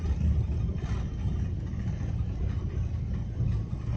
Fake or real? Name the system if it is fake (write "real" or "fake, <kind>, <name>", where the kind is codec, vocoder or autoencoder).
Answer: real